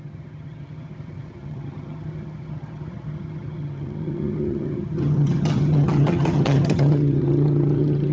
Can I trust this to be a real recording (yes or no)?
no